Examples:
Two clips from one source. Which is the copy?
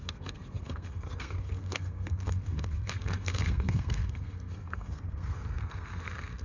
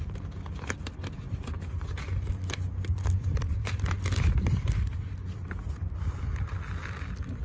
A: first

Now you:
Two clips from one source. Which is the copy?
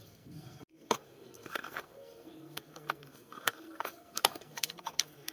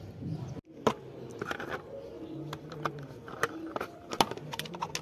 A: first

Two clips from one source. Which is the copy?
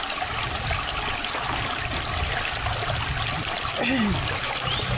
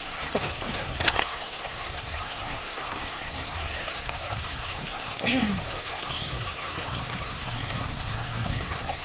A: second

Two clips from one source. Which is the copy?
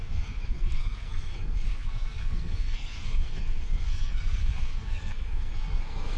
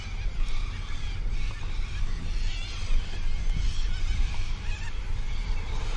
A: first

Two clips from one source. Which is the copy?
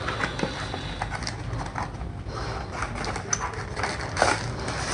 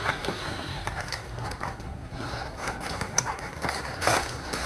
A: second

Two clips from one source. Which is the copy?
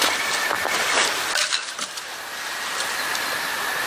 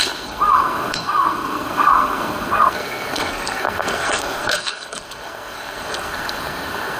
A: second